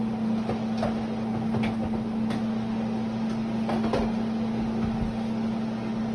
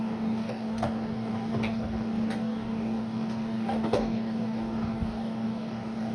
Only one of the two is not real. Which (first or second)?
second